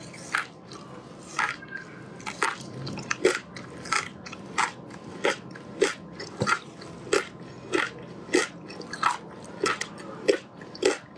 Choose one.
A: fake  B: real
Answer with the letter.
B